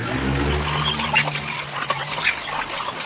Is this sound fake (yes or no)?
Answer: no